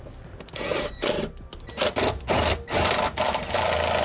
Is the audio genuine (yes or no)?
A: yes